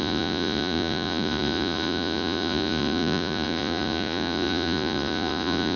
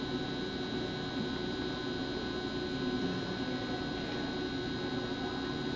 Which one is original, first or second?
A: second